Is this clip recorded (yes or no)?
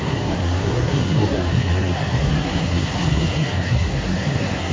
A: no